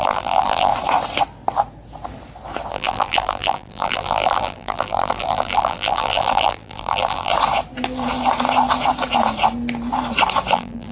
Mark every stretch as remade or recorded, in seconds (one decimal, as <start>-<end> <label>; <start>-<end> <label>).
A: 0.0-0.7 remade; 0.7-2.7 recorded; 2.7-7.3 remade; 7.3-10.5 recorded; 10.5-10.9 remade